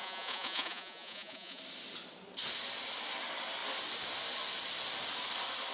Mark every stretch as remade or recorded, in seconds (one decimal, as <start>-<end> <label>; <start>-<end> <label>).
0.0-1.6 remade; 1.6-5.7 recorded